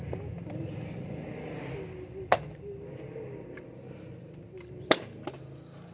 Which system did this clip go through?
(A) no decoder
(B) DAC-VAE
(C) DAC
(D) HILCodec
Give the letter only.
A